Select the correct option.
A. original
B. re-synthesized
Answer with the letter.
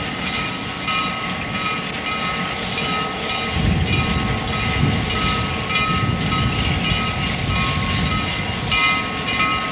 A